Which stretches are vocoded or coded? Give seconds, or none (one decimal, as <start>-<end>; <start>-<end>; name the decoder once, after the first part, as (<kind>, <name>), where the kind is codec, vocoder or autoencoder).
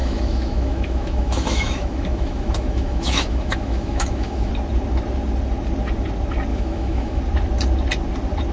0.0-4.5 (autoencoder, DAC-VAE); 6.5-7.2